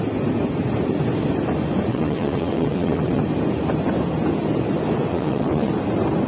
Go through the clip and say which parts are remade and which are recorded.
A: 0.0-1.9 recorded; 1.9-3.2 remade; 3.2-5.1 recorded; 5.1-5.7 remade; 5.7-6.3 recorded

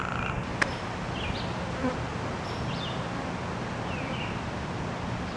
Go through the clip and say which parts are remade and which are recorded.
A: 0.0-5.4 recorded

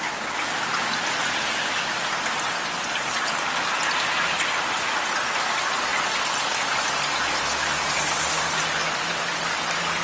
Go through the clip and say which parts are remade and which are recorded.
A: 0.0-10.0 recorded

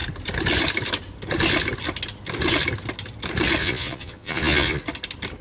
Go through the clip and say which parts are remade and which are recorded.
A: 0.0-3.6 recorded; 3.6-4.8 remade; 4.8-5.4 recorded